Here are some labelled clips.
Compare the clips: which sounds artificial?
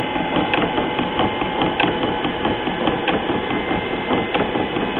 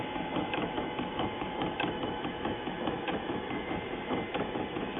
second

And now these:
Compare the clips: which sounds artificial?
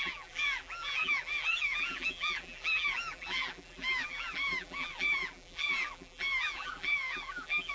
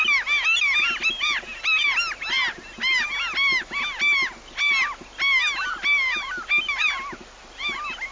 first